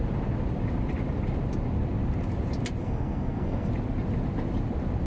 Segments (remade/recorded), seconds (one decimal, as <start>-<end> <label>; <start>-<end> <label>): 0.0-2.8 recorded; 2.8-3.7 remade; 3.7-5.1 recorded